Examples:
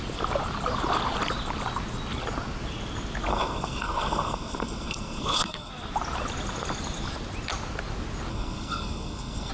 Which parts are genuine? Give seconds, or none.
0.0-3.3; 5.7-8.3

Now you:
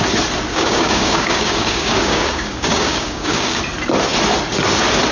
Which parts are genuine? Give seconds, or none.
0.0-0.5; 3.6-5.1

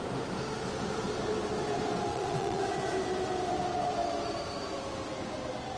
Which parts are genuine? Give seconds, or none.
0.0-2.1; 2.6-5.8

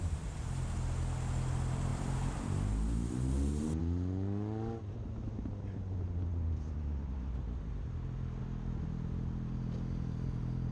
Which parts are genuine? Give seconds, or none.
0.0-10.7

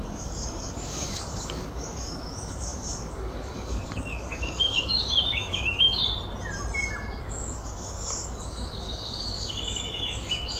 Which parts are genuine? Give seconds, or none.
6.0-7.2

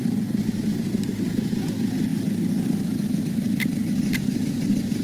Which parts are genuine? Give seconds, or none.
0.0-0.7; 1.7-5.0